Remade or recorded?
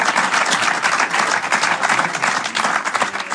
recorded